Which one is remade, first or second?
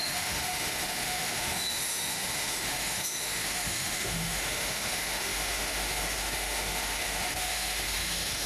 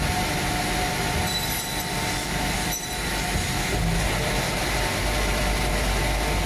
first